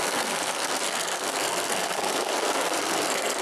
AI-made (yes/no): yes